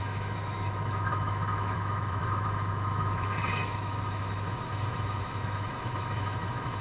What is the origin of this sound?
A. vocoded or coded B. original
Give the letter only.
A